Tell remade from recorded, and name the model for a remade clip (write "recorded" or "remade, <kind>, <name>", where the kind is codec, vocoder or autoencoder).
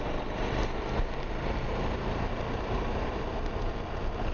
recorded